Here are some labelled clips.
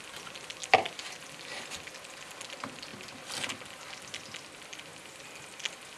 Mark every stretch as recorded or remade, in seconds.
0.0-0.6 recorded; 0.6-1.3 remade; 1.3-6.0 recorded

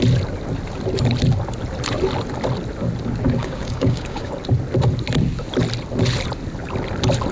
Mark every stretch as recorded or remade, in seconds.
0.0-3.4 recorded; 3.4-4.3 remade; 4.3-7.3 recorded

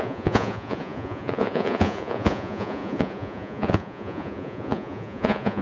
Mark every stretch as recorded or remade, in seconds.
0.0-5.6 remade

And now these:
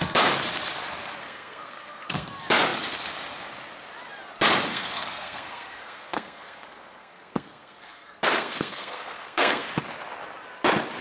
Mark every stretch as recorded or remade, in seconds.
0.0-1.2 recorded; 1.2-2.3 remade; 2.3-4.7 recorded; 4.7-9.7 remade; 9.7-11.0 recorded

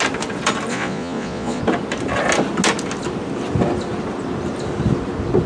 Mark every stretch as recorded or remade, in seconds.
0.0-0.7 recorded; 0.7-1.6 remade; 1.6-5.5 recorded